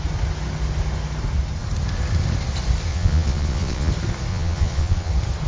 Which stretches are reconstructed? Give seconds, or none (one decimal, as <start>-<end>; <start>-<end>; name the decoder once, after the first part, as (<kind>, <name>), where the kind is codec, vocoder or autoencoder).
2.9-3.9 (vocoder, Vocos); 4.3-5.1